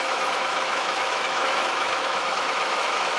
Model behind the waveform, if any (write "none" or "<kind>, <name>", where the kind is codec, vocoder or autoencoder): autoencoder, DAC-VAE